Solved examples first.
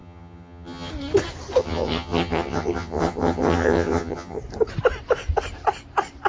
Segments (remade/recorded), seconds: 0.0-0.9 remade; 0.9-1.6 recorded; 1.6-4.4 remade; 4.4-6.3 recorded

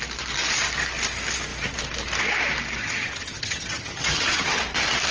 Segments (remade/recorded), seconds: 0.0-2.8 recorded; 2.8-4.6 remade; 4.6-5.1 recorded

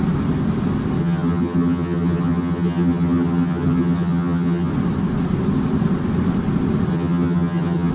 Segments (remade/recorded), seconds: 0.0-1.0 recorded; 1.0-4.7 remade; 4.7-6.9 recorded; 6.9-7.9 remade

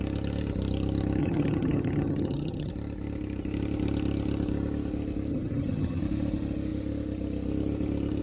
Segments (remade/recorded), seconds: 0.0-1.2 recorded; 1.2-2.7 remade; 2.7-5.3 recorded; 5.3-6.0 remade; 6.0-8.2 recorded

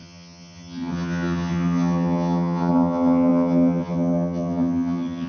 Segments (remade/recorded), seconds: 0.0-5.3 remade